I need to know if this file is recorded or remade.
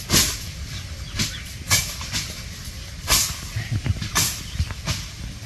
recorded